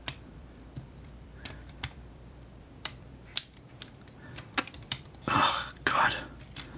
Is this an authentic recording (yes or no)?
no